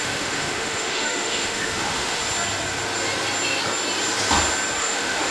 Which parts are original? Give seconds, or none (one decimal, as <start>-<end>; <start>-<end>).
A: 2.2-4.8